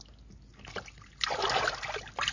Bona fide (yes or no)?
yes